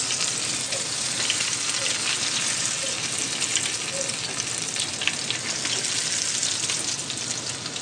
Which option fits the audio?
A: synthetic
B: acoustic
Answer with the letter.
B